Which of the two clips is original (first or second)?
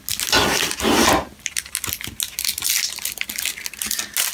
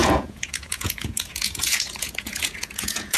first